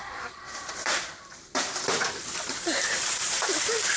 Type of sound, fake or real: fake